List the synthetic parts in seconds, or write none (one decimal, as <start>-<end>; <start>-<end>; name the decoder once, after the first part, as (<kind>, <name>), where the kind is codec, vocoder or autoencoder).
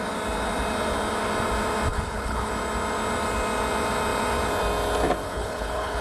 1.9-2.5 (codec, HILCodec); 5.2-6.0